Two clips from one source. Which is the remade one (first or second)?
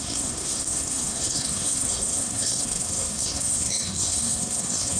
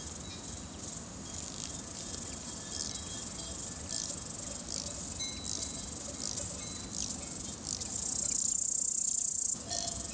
first